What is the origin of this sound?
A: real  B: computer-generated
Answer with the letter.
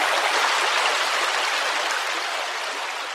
A